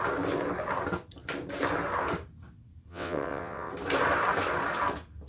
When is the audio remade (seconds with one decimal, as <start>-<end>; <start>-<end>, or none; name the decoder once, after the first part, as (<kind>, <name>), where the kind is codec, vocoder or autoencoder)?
2.9-3.7 (vocoder, WaveNeXt)

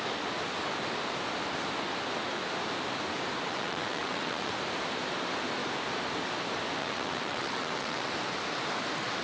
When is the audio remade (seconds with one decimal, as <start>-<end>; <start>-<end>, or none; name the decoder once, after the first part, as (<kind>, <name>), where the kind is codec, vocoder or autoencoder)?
3.5-4.5 (vocoder, WaveNeXt); 6.8-8.1